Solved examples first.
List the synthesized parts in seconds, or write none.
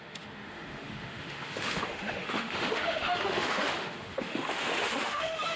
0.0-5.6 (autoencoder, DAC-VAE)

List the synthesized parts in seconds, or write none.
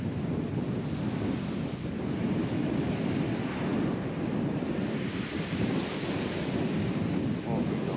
2.4-3.0 (autoencoder, DAC-VAE)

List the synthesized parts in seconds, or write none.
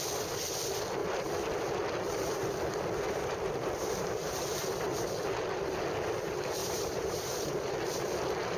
6.6-7.5 (vocoder, BigVGAN v2)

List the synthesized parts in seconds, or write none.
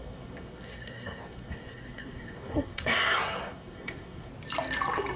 0.0-4.3 (codec, SNAC)